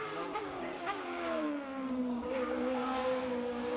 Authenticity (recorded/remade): remade